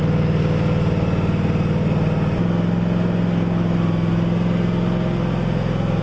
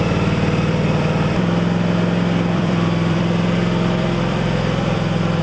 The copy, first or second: second